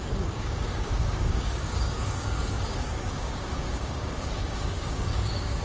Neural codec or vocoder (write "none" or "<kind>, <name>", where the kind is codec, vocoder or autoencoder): codec, DAC